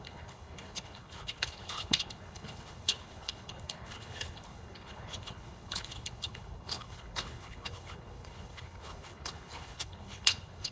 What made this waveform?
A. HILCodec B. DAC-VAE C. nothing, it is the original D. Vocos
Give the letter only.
A